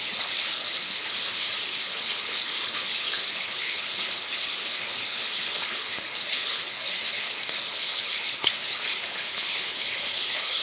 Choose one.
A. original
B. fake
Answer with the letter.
B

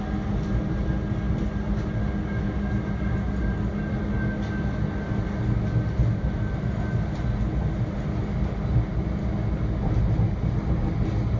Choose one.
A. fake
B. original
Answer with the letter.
B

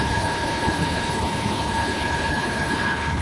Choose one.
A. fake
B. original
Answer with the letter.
A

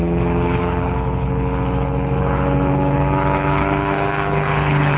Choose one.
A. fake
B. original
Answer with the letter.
A